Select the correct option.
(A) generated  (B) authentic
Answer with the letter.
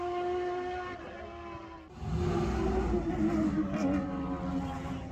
B